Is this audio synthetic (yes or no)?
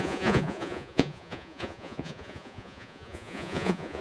yes